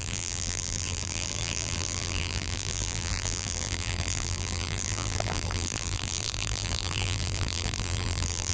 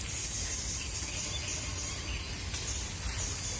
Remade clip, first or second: first